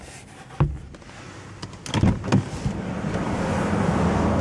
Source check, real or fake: real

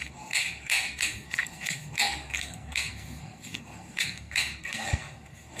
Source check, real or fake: fake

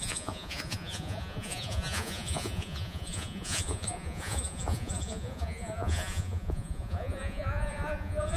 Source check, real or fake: fake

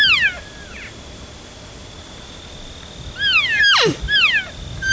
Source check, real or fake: real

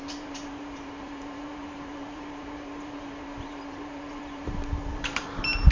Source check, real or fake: fake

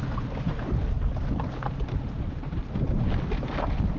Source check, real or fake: real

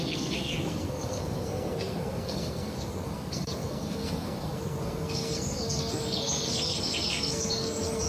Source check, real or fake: fake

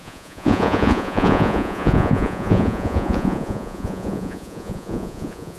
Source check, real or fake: fake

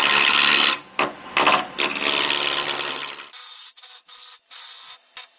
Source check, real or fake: real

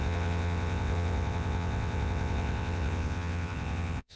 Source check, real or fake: fake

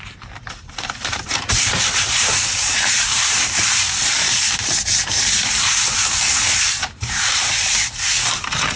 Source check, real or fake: fake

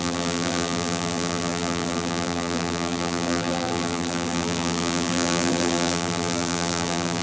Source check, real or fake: fake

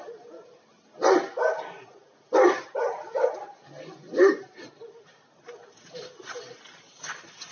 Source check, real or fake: real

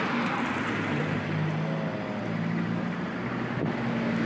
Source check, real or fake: real